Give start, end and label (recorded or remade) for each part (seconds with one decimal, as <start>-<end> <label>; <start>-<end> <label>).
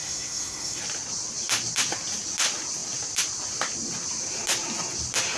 0.0-0.8 remade; 0.8-5.4 recorded